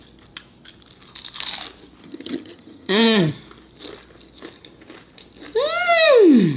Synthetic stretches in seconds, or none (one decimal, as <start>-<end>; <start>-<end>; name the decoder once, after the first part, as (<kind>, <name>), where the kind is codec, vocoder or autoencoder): 2.0-3.3 (vocoder, HiFi-GAN)